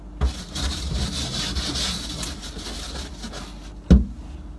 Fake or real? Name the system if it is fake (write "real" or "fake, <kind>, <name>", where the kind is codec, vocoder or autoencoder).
real